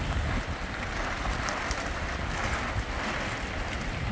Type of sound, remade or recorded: recorded